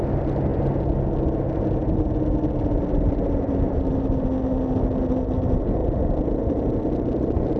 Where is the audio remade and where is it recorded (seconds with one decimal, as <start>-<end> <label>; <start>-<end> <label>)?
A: 0.0-7.6 recorded